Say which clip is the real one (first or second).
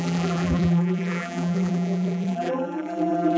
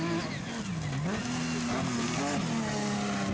second